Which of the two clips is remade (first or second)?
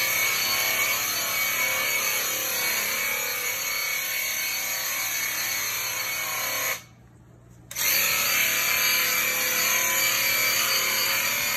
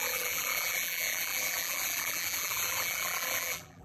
second